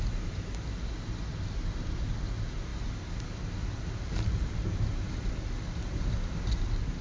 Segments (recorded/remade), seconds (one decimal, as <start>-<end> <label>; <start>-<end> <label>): 0.0-7.0 recorded